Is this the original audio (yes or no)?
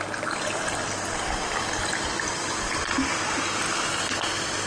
yes